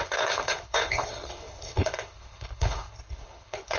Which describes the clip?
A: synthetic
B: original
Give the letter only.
A